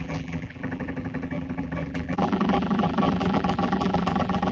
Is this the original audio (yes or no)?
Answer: no